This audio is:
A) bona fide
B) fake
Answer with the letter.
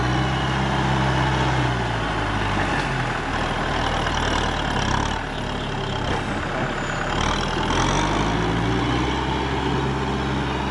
A